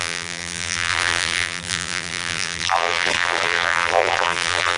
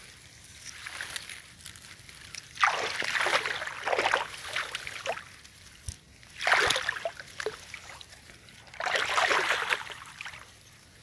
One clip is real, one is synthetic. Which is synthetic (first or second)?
first